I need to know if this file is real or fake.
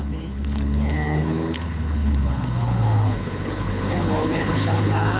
fake